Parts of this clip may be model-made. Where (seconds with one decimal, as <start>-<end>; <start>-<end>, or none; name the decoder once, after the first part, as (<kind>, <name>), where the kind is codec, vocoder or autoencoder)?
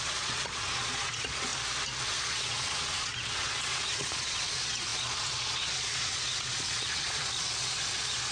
0.0-1.5 (vocoder, Vocos); 2.0-8.3